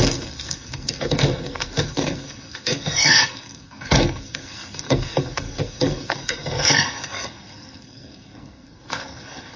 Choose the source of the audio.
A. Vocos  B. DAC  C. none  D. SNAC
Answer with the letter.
D